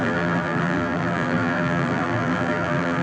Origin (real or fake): fake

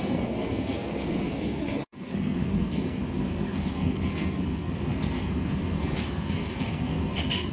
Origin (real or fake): fake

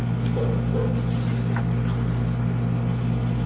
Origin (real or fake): real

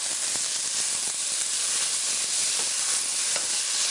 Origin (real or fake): real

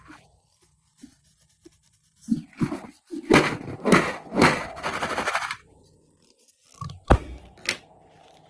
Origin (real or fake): real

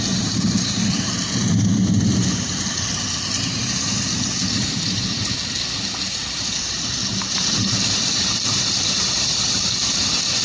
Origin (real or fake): real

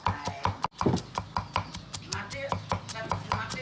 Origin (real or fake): real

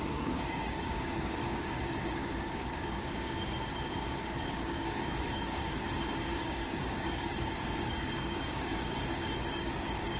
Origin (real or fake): fake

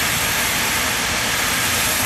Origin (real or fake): fake